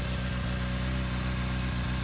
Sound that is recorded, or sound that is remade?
recorded